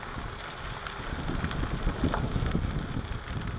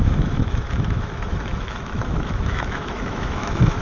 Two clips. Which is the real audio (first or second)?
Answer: first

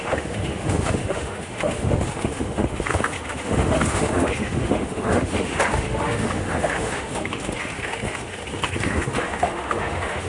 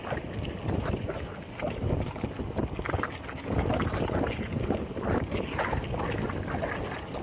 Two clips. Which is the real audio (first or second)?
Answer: second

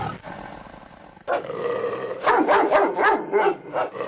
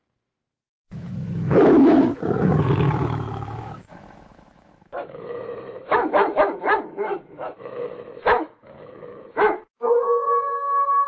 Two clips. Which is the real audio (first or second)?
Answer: first